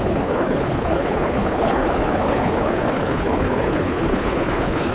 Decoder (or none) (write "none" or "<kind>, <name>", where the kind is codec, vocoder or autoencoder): codec, HILCodec